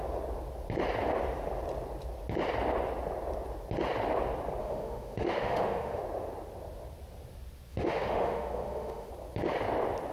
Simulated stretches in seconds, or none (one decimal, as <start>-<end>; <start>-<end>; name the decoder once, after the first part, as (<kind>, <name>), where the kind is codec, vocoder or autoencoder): 4.6-6.0 (autoencoder, DAC-VAE); 7.7-9.1